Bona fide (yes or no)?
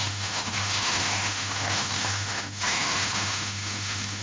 no